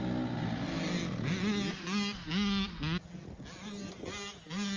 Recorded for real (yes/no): yes